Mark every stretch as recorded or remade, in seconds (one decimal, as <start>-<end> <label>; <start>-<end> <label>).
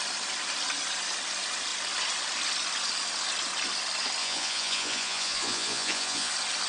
0.0-4.2 recorded; 4.2-6.3 remade; 6.3-6.7 recorded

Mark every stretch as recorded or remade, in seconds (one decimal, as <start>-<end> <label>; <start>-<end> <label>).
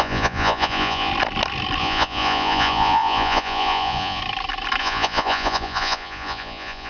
0.0-1.1 remade; 1.1-1.8 recorded; 1.8-4.2 remade; 4.2-4.8 recorded; 4.8-6.9 remade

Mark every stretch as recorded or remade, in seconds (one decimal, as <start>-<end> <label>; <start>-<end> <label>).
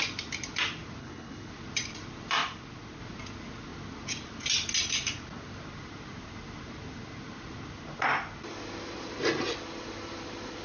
0.0-1.0 recorded; 1.0-1.5 remade; 1.5-10.6 recorded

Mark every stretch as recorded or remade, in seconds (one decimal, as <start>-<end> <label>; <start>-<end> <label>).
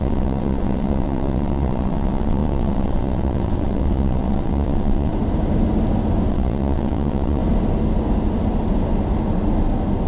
0.0-5.1 remade; 5.1-6.3 recorded; 6.3-7.4 remade; 7.4-10.1 recorded